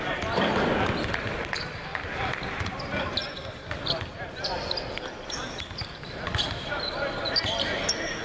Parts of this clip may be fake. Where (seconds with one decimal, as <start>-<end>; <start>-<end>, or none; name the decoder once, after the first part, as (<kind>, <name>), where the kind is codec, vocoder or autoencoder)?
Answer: 1.9-2.7 (vocoder, BigVGAN v2)